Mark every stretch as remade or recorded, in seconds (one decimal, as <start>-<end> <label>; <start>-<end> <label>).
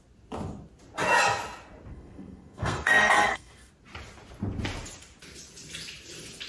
0.0-1.9 recorded; 1.9-3.7 remade; 3.7-6.5 recorded